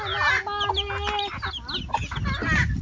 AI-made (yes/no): no